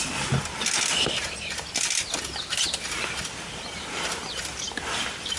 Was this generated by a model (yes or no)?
no